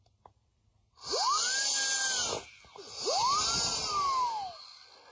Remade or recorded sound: recorded